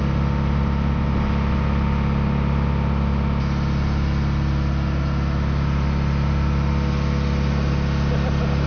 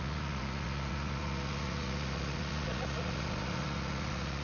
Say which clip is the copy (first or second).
second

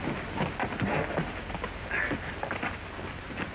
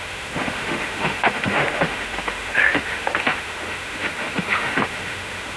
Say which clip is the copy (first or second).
second